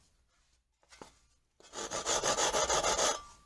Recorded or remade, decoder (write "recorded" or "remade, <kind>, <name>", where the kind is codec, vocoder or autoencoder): recorded